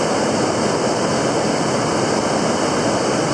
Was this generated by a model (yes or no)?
no